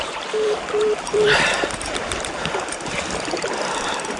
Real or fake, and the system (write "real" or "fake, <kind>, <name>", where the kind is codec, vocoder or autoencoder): fake, vocoder, BigVGAN v2